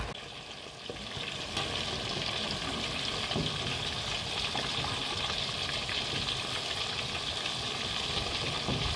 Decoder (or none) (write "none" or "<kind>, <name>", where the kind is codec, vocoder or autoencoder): none